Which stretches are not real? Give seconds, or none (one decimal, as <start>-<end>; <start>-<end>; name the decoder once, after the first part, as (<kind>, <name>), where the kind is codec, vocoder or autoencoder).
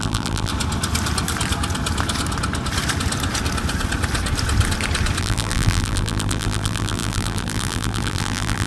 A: 0.0-0.5 (vocoder, BigVGAN v2); 5.2-8.7